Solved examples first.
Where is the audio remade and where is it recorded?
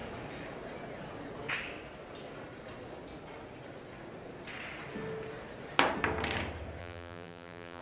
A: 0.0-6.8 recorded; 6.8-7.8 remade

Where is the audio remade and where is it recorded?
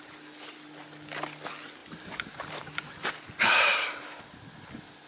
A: 0.0-1.8 recorded; 1.8-4.2 remade; 4.2-5.1 recorded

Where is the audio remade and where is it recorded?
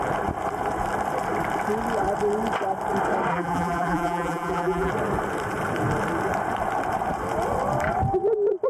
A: 0.0-3.3 recorded; 3.3-4.9 remade; 4.9-8.7 recorded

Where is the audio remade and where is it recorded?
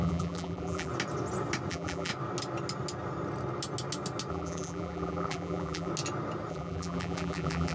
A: 0.0-0.9 remade; 0.9-1.7 recorded; 1.7-2.1 remade; 2.1-4.3 recorded; 4.3-5.9 remade; 5.9-6.5 recorded; 6.5-7.7 remade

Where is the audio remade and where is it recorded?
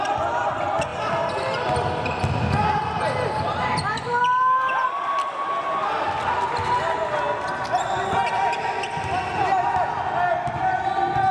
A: 0.0-0.9 recorded; 0.9-1.8 remade; 1.8-11.3 recorded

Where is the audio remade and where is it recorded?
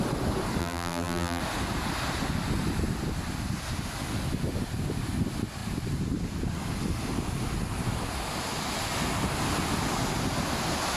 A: 0.0-0.6 recorded; 0.6-1.4 remade; 1.4-11.0 recorded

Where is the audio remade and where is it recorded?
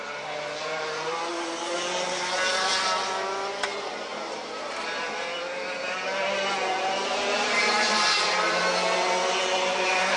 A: 0.0-0.6 recorded; 0.6-1.3 remade; 1.3-4.1 recorded; 4.1-8.6 remade; 8.6-10.2 recorded